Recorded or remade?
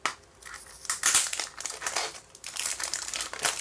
recorded